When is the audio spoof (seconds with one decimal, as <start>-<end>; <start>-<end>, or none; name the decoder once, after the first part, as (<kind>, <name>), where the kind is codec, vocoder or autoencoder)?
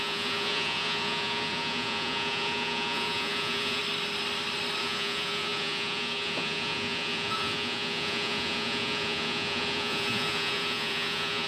0.0-3.8 (vocoder, Vocos); 4.8-11.5